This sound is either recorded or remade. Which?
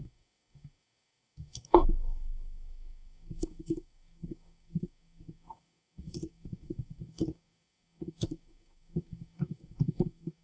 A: remade